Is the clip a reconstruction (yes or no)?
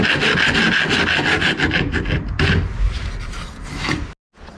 no